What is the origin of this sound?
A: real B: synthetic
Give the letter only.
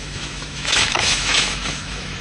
B